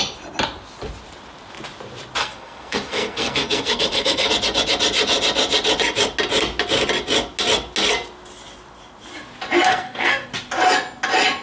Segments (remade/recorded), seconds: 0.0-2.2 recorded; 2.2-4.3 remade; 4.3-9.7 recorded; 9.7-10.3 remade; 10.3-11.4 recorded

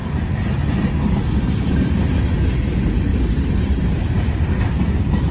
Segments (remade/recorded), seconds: 0.0-3.1 recorded; 3.1-4.5 remade; 4.5-5.3 recorded

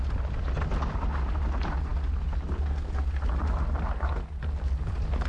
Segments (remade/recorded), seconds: 0.0-5.3 recorded

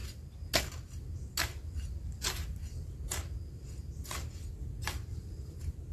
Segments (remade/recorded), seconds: 0.0-5.9 recorded

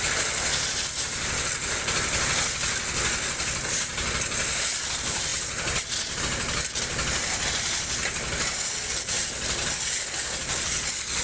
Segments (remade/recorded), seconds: 0.0-11.2 recorded

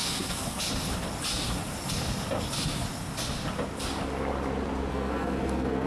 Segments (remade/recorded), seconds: 0.0-0.6 remade; 0.6-4.9 recorded; 4.9-5.9 remade

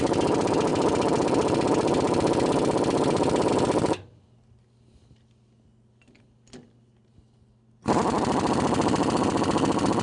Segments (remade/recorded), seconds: 0.0-10.0 recorded